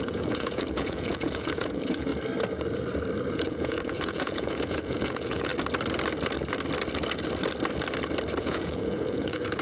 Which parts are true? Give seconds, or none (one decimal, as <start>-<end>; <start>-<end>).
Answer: 2.1-3.3; 5.5-8.4